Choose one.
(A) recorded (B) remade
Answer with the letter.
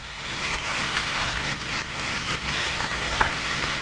B